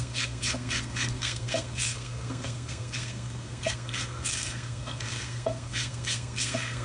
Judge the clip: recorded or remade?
remade